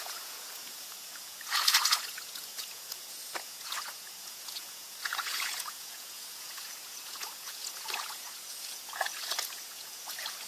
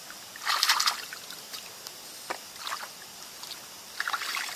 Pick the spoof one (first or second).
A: first